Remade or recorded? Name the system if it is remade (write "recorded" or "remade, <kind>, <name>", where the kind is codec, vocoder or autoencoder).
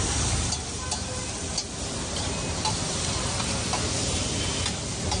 recorded